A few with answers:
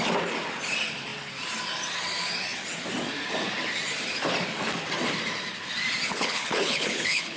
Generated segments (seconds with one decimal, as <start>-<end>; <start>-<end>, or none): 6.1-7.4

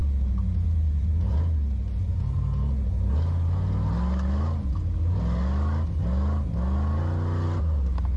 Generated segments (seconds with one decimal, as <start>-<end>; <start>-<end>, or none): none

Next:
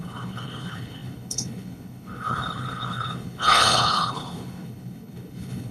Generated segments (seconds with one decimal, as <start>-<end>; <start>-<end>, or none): 0.0-5.7